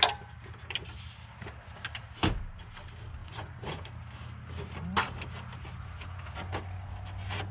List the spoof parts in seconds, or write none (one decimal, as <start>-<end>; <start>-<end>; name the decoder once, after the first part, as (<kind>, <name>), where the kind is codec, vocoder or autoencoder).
3.2-3.9 (vocoder, Vocos)